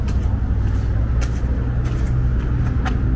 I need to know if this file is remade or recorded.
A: recorded